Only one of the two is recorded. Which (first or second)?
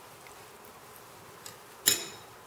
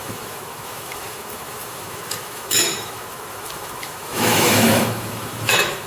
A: first